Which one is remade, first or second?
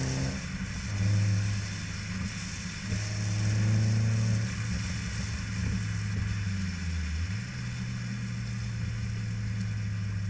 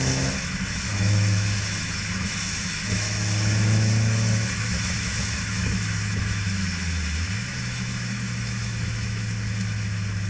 second